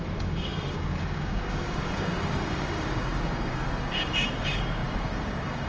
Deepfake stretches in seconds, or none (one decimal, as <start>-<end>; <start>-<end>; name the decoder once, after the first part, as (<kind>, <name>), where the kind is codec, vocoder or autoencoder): 0.0-5.7 (codec, DAC)